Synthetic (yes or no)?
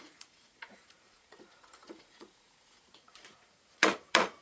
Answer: yes